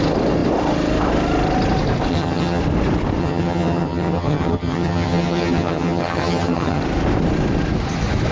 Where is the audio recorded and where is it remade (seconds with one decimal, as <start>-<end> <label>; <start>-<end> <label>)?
0.0-2.1 recorded; 2.1-2.6 remade; 2.6-3.2 recorded; 3.2-6.8 remade; 6.8-8.3 recorded